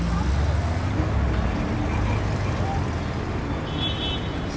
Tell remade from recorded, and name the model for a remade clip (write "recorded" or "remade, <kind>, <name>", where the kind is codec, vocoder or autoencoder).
recorded